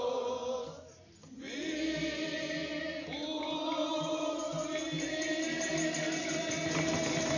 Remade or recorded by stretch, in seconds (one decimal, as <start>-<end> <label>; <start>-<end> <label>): 0.0-7.4 recorded